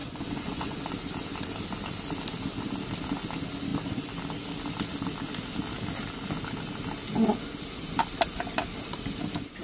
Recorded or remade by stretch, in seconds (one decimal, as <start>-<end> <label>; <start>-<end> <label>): 0.0-0.9 remade; 0.9-9.6 recorded